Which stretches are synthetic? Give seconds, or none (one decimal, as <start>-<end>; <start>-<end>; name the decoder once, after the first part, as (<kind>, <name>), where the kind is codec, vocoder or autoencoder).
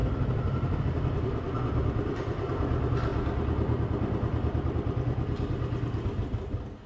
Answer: 0.0-3.1 (vocoder, BigVGAN v2)